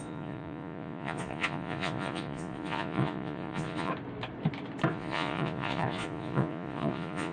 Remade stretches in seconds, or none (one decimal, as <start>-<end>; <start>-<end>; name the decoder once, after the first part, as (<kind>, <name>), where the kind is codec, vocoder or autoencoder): 0.0-3.9 (vocoder, Vocos); 4.9-7.3